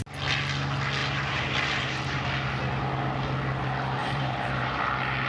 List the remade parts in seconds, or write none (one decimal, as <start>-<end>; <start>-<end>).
1.0-2.2; 4.0-4.8